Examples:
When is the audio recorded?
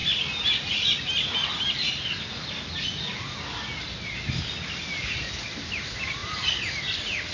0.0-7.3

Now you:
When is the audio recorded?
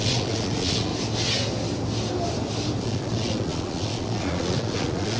0.9-2.8